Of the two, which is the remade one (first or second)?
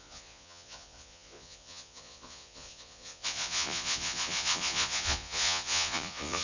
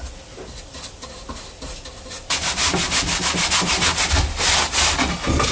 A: first